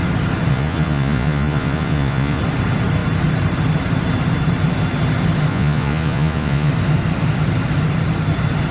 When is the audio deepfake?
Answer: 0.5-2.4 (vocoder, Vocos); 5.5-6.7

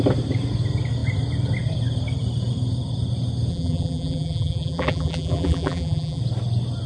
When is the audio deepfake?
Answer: 3.5-6.2 (vocoder, BigVGAN v2)

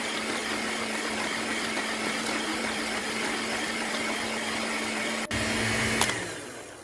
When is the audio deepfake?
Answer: none

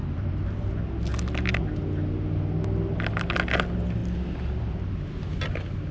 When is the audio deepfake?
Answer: 0.0-0.7 (vocoder, BigVGAN v2)

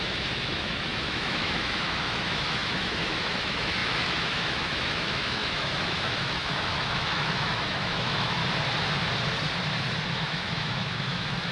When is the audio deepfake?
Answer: 0.0-8.4 (autoencoder, DAC-VAE); 10.2-11.5